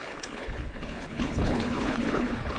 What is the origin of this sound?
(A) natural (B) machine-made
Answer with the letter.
B